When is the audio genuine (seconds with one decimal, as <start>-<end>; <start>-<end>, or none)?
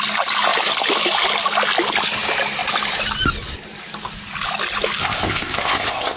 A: 0.0-5.0